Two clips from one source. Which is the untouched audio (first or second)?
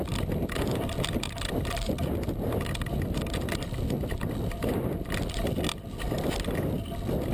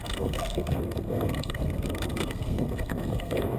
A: first